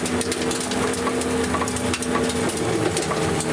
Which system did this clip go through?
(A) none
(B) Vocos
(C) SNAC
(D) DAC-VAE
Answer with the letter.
A